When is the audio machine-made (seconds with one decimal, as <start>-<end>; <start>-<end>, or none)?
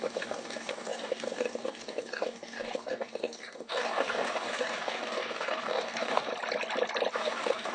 0.0-6.3; 7.1-7.7